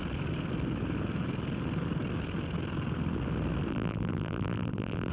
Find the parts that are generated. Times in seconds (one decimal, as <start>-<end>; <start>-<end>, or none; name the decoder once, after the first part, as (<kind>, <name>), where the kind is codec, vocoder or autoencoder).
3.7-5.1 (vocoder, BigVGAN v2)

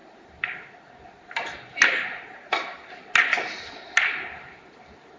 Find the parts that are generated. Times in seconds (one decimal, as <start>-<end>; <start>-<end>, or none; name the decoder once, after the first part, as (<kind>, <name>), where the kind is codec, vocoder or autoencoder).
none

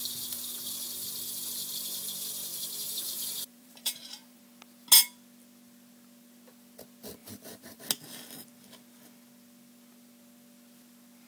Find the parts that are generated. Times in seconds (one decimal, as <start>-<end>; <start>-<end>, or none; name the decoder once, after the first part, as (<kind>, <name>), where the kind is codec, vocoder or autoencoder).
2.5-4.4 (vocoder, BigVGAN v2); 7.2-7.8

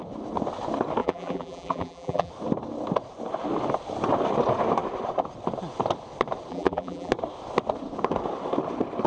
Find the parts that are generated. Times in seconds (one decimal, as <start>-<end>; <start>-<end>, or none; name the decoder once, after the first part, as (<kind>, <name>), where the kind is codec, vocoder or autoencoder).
1.0-2.3 (vocoder, BigVGAN v2); 6.5-7.1